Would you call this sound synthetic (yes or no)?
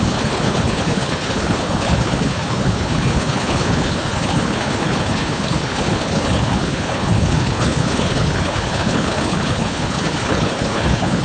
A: yes